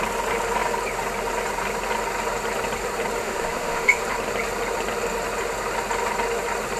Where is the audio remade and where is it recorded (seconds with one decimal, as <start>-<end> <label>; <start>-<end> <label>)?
0.0-3.2 recorded; 3.2-4.0 remade; 4.0-6.8 recorded